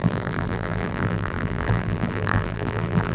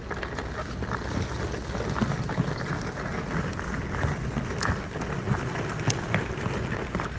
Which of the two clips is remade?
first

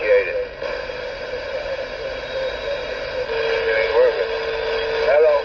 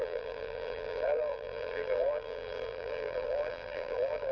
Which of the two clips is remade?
second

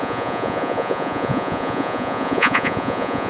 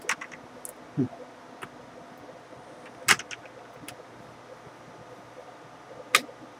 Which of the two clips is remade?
first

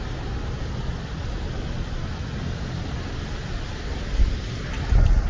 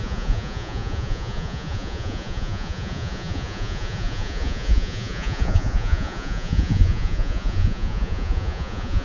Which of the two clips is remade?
second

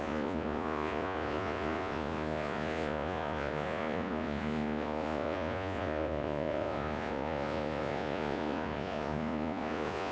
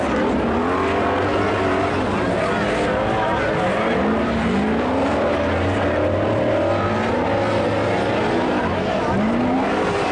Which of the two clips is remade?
first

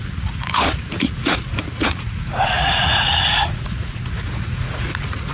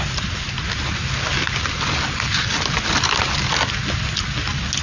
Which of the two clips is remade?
first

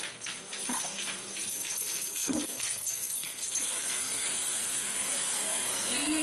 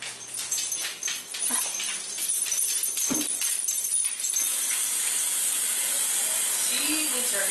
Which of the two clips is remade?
first